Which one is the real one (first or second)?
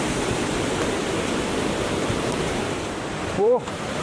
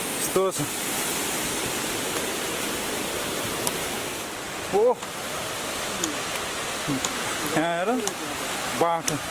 second